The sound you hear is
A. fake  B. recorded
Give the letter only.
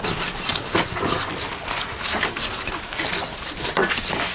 B